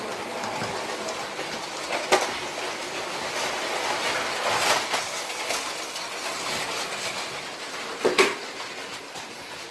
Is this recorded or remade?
recorded